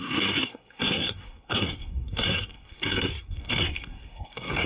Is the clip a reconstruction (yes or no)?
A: yes